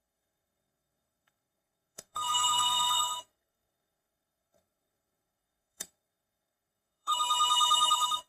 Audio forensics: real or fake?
fake